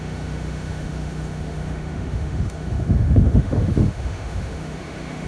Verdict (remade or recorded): remade